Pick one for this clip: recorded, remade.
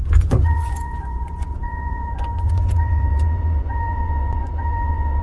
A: remade